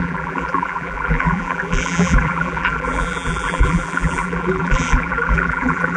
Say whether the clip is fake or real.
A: fake